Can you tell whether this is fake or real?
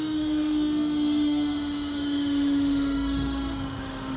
fake